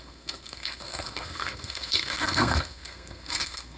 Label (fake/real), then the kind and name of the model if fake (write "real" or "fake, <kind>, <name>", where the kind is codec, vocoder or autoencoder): fake, codec, SNAC